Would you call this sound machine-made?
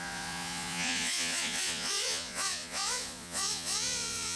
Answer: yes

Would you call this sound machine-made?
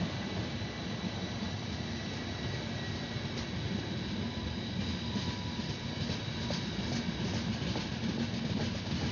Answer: no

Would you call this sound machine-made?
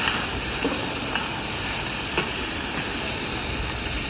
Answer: no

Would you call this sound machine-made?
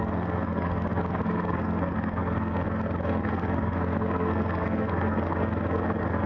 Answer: yes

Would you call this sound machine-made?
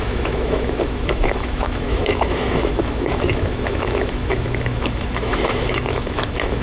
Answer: yes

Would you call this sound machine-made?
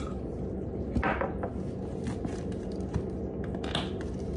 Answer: no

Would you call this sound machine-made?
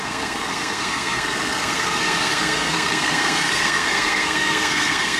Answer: yes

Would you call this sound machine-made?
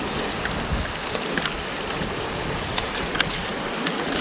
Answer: no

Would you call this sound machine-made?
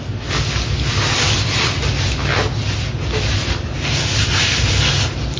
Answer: no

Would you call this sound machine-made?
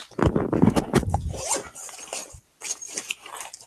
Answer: no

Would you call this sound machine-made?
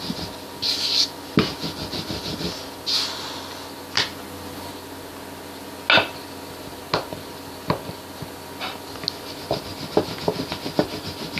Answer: no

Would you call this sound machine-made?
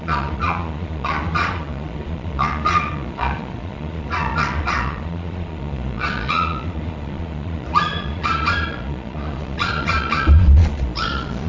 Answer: yes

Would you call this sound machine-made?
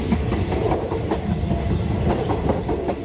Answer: no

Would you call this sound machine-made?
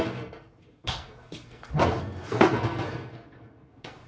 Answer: yes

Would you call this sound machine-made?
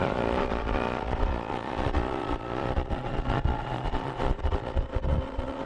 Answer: yes